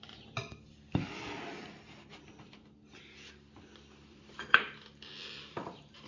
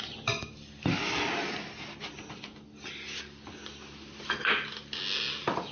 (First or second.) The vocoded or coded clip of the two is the first